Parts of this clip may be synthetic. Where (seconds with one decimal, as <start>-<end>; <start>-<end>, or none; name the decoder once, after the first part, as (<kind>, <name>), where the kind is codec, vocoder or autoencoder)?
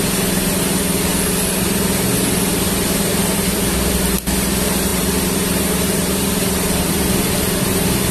4.9-6.9 (vocoder, BigVGAN v2)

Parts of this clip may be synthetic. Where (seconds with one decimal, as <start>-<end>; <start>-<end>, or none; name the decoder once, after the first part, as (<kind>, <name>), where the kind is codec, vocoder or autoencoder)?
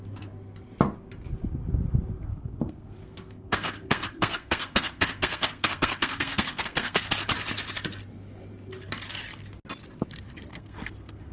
2.3-7.1 (codec, SNAC); 10.5-11.3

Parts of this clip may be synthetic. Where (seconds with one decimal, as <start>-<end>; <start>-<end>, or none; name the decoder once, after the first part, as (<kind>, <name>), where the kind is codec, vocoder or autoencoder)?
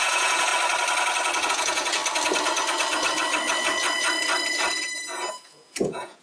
0.0-0.5 (vocoder, Vocos); 1.5-2.0; 5.3-6.2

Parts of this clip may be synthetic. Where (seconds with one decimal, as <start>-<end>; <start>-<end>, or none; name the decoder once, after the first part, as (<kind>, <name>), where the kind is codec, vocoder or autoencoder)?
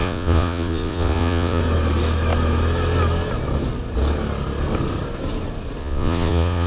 0.0-1.6 (vocoder, Vocos); 5.8-6.7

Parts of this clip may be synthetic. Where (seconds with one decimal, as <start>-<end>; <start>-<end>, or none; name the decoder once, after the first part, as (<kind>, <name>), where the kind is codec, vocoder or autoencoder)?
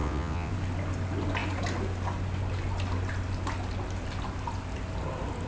0.0-0.5 (vocoder, WaveNeXt)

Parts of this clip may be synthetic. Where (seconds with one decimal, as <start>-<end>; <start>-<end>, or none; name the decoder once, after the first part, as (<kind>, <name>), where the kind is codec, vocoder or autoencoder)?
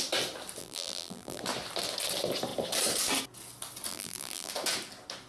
0.6-1.4 (vocoder, BigVGAN v2); 3.9-4.5